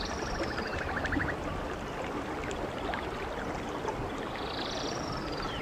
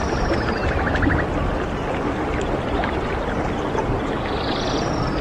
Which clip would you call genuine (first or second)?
second